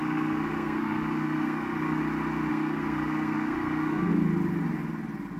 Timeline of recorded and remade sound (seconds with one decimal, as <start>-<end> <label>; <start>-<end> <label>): 0.0-2.0 remade; 2.0-2.5 recorded; 2.5-4.1 remade; 4.1-5.4 recorded